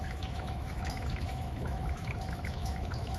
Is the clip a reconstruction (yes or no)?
yes